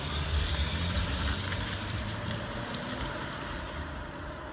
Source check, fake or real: fake